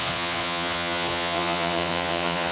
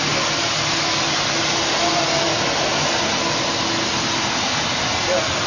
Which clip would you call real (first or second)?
second